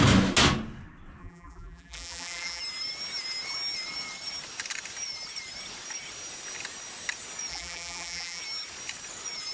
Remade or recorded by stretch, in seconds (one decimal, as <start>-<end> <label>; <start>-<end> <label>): 0.0-1.2 recorded; 1.2-2.6 remade; 2.6-7.5 recorded; 7.5-8.4 remade; 8.4-9.5 recorded